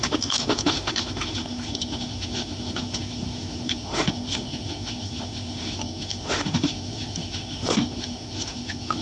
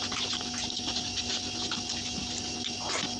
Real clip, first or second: second